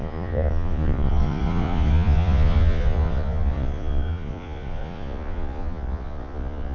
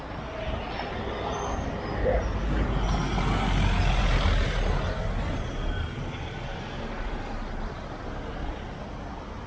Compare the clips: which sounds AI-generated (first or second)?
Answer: first